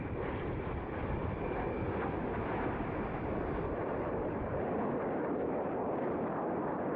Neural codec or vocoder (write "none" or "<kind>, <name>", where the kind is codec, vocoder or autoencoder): none